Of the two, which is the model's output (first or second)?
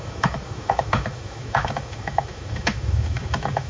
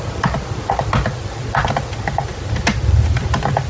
first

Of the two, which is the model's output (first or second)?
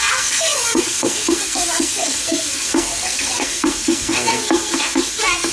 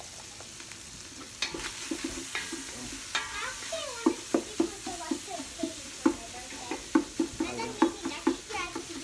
first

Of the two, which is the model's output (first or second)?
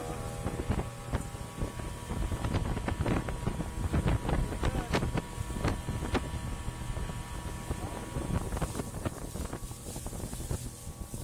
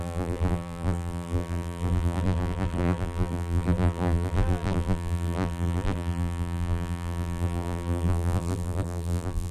second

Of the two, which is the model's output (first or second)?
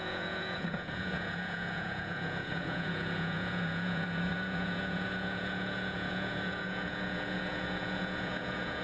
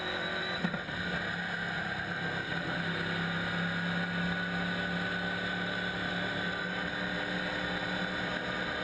first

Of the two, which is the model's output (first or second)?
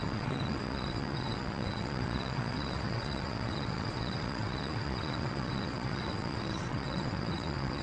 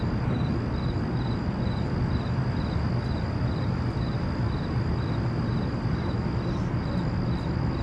first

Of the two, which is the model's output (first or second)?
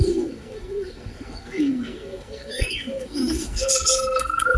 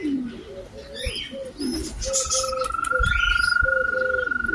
first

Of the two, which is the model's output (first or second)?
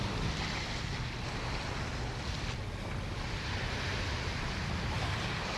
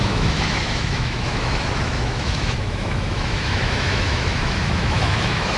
second